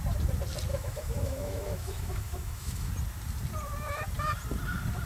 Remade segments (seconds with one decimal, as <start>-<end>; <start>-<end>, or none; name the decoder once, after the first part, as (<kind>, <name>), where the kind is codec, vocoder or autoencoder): 0.7-2.9 (autoencoder, DAC-VAE)